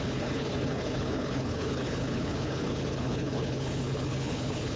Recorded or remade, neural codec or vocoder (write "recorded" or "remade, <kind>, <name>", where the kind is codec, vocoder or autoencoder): remade, codec, HILCodec